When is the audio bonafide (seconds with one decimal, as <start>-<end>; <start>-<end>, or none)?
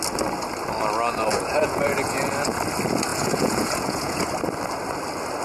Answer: 0.0-1.3; 2.2-3.1; 4.2-5.4